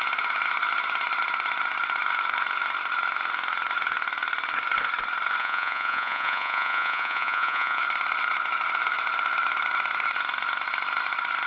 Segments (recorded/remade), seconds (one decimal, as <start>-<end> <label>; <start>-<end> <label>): 0.0-5.4 recorded; 5.4-7.8 remade; 7.8-11.5 recorded